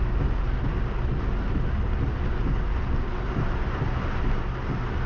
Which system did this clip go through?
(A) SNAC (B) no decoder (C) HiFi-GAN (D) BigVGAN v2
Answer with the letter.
B